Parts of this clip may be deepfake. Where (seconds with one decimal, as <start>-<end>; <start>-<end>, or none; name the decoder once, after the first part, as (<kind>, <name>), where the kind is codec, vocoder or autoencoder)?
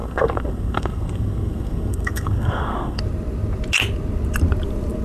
0.0-3.0 (codec, SNAC)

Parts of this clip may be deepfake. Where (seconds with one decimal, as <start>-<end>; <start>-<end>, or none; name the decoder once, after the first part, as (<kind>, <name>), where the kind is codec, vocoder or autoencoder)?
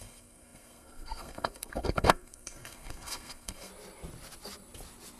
0.0-3.7 (codec, SNAC)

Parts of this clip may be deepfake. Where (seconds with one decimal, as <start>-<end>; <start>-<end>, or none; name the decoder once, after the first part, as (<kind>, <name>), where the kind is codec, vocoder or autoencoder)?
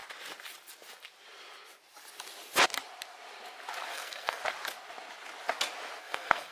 3.9-4.4 (codec, SNAC); 6.0-6.5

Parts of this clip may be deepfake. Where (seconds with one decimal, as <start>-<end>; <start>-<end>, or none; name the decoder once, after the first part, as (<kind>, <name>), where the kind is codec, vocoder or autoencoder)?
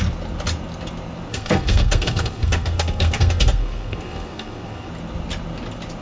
1.3-4.9 (codec, SNAC)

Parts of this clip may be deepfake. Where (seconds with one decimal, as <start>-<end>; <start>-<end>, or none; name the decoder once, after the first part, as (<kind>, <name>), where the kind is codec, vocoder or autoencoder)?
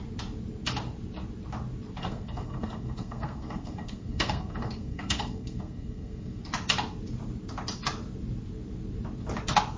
2.0-6.4 (codec, SNAC)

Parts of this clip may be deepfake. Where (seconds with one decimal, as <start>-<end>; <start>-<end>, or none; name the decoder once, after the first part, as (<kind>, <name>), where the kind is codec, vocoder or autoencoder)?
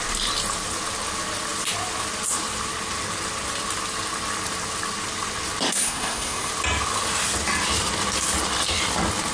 5.7-6.5 (codec, SNAC)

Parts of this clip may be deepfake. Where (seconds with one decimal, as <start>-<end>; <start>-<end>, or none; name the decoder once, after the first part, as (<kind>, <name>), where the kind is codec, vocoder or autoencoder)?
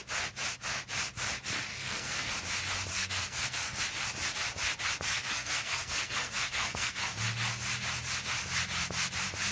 1.7-2.3 (codec, SNAC); 2.9-3.8; 5.1-7.2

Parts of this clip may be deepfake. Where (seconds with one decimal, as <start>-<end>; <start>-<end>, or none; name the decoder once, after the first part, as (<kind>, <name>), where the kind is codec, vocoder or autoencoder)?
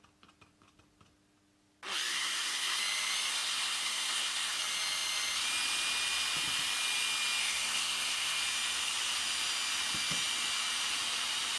2.1-2.8 (codec, SNAC); 3.3-4.6; 7.4-8.4